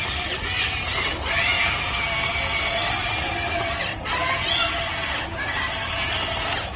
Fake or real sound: real